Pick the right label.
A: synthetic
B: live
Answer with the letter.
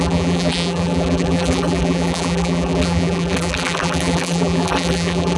A